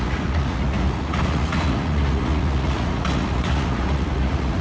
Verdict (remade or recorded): remade